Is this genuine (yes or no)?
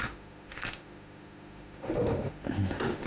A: no